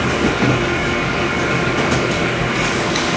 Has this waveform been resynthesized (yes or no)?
yes